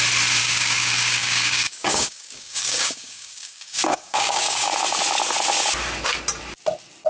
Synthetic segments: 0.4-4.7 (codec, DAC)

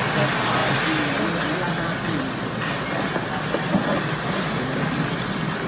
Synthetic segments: none